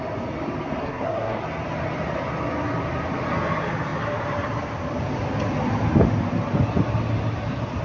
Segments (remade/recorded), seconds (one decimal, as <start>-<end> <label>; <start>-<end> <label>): 0.0-0.8 recorded; 0.8-1.4 remade; 1.4-7.8 recorded